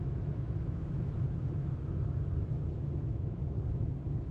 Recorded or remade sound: remade